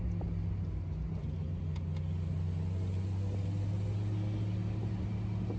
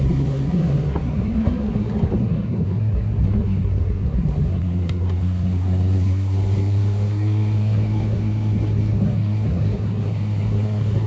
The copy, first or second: second